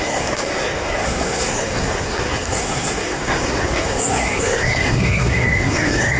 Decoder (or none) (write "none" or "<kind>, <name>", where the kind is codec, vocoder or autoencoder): codec, SNAC